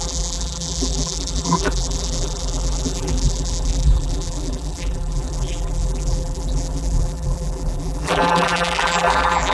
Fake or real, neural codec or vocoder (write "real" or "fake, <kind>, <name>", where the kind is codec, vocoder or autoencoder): fake, vocoder, BigVGAN v2